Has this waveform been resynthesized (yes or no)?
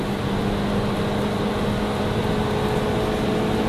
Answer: no